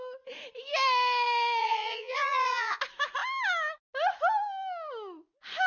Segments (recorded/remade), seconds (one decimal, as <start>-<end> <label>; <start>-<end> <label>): 0.0-1.6 recorded; 1.6-2.8 remade; 2.8-5.7 recorded

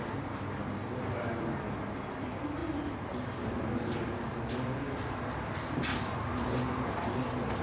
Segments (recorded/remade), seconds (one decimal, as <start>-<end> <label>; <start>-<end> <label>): 0.0-5.9 recorded; 5.9-6.7 remade; 6.7-7.6 recorded